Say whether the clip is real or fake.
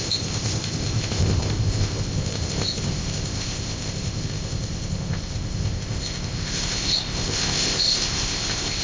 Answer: fake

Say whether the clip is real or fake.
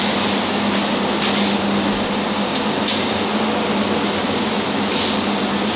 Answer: real